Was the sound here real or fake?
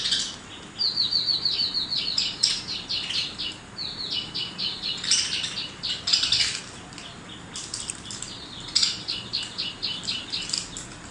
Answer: real